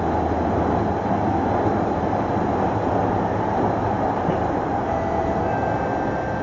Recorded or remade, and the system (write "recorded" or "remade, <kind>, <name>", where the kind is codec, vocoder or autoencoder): recorded